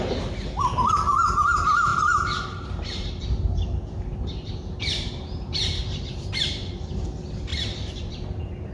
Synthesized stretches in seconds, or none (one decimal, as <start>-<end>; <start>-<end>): 1.9-6.9; 7.5-8.1